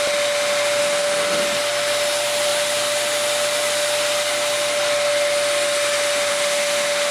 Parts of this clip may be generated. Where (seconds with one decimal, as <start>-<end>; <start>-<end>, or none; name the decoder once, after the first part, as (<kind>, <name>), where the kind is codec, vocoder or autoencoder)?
0.8-1.4 (autoencoder, DAC-VAE); 6.3-7.1